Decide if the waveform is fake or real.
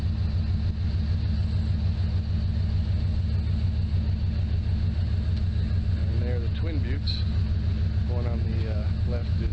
real